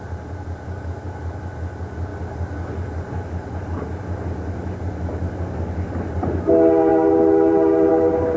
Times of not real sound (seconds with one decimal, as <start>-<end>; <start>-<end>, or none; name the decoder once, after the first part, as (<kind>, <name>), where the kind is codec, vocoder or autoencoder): none